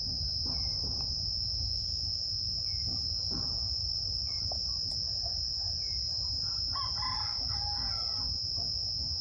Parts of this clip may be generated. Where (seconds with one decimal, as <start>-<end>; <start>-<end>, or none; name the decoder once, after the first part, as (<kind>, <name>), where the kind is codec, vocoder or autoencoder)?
3.8-4.4 (vocoder, BigVGAN v2)